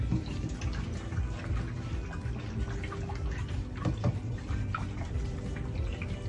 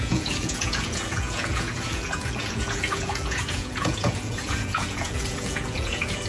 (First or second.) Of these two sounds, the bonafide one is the first